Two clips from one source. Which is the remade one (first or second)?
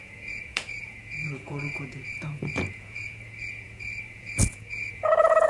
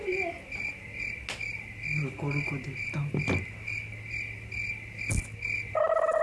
first